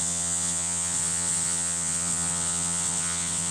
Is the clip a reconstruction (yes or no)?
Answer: yes